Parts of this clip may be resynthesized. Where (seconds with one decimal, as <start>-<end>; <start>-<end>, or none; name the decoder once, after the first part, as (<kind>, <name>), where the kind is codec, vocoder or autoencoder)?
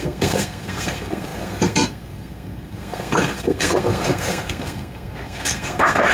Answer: 0.0-6.1 (codec, SNAC)